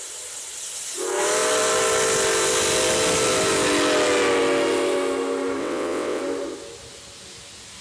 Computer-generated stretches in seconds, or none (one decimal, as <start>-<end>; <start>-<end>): 5.6-6.2